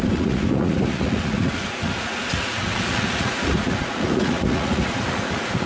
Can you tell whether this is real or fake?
fake